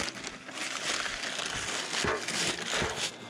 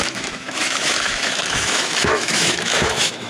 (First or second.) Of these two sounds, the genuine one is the first